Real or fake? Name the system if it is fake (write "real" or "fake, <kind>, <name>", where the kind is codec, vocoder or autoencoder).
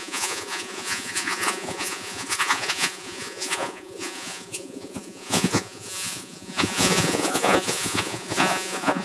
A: fake, vocoder, Vocos